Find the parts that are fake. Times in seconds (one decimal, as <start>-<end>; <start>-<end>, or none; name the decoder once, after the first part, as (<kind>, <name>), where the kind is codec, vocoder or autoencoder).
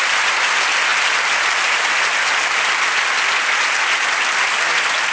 none